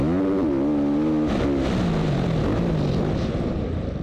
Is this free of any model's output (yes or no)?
yes